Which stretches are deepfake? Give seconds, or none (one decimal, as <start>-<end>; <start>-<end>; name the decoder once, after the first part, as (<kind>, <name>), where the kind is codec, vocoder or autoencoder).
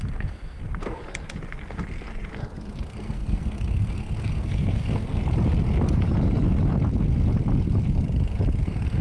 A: 0.0-1.0 (codec, SNAC); 2.8-5.2; 8.6-9.0